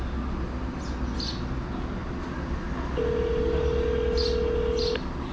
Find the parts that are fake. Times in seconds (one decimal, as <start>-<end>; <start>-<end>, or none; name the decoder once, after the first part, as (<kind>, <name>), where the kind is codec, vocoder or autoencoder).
none